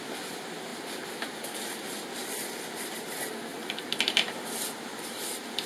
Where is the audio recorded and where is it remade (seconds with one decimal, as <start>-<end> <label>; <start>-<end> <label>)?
0.0-5.7 recorded